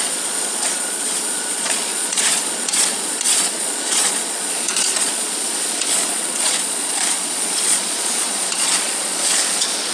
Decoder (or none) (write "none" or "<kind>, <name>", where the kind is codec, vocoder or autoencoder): vocoder, Vocos